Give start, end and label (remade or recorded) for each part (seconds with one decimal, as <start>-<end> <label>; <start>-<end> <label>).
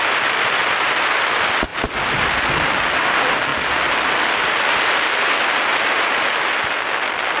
0.0-7.4 recorded